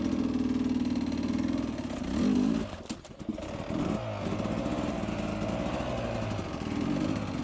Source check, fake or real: real